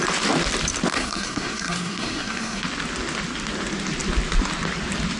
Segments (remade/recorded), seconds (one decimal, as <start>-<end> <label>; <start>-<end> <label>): 0.0-0.9 recorded; 0.9-2.6 remade; 2.6-5.2 recorded